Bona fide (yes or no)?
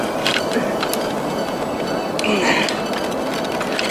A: yes